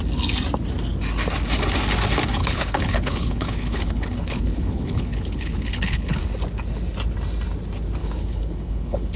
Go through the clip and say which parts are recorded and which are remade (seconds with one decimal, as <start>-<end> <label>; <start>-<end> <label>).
0.0-2.4 recorded; 2.4-6.2 remade; 6.2-8.0 recorded; 8.0-9.2 remade